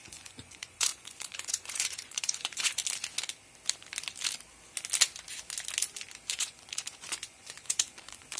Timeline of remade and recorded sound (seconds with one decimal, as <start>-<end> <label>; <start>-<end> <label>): 0.0-2.8 remade; 2.8-6.3 recorded; 6.3-8.4 remade